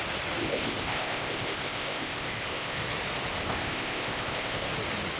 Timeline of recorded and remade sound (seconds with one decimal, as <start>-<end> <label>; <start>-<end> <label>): 0.0-0.4 recorded; 0.4-2.8 remade; 2.8-3.3 recorded; 3.3-4.7 remade; 4.7-5.2 recorded